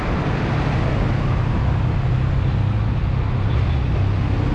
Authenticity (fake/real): real